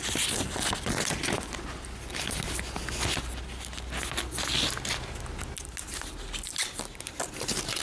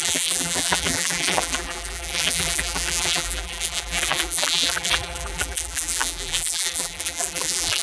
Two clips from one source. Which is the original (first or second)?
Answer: first